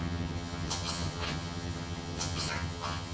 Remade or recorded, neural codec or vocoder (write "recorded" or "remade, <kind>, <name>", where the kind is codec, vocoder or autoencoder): remade, vocoder, HiFi-GAN